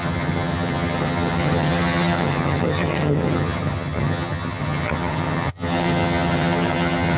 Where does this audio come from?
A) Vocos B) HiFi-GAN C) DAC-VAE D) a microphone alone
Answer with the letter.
B